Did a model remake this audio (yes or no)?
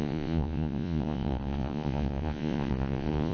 yes